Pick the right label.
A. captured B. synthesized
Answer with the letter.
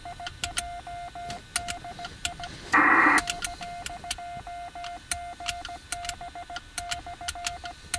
A